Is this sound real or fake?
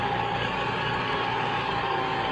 fake